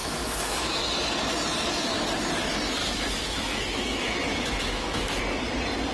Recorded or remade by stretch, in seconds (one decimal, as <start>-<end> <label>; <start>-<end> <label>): 0.0-0.8 remade; 0.8-2.8 recorded; 2.8-5.2 remade; 5.2-5.9 recorded